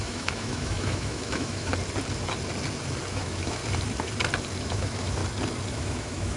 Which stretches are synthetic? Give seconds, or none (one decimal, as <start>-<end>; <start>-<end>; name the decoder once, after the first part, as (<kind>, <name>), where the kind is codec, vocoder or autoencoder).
0.0-1.7 (autoencoder, DAC-VAE); 3.1-3.6; 4.6-5.2; 5.7-6.4